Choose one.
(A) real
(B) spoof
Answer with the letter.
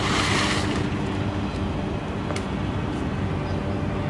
A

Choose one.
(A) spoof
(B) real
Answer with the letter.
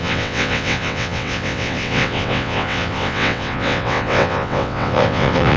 A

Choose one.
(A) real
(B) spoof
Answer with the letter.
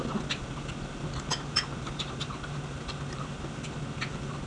A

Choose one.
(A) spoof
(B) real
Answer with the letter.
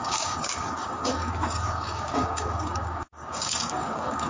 A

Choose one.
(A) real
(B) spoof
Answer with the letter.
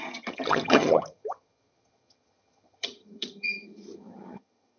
B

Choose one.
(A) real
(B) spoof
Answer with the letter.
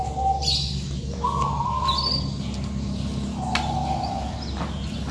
A